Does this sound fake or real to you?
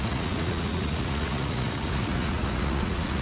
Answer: fake